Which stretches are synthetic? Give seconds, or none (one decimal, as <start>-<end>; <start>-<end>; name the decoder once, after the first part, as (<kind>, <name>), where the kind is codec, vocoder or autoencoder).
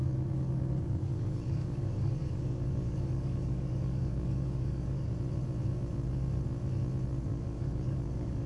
0.0-5.1 (codec, DAC); 7.3-8.5